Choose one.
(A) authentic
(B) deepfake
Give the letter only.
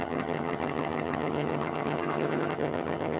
B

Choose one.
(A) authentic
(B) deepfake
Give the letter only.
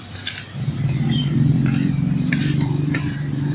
B